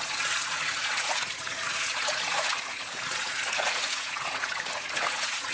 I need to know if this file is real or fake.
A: fake